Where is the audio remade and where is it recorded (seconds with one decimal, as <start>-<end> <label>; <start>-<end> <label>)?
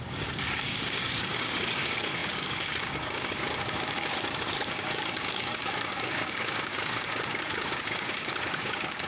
0.0-9.1 remade